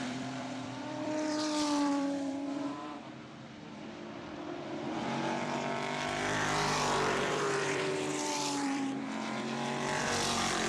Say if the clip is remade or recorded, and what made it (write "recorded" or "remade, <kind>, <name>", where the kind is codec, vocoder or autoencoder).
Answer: remade, vocoder, BigVGAN v2